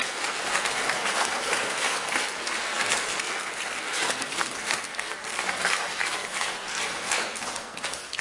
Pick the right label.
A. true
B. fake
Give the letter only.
B